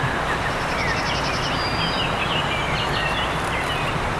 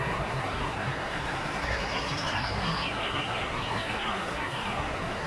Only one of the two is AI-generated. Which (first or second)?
second